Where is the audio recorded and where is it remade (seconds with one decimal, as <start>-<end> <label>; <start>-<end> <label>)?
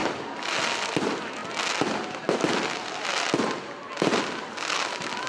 0.0-5.3 recorded